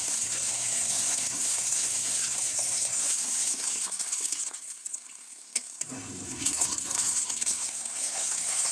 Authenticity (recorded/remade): remade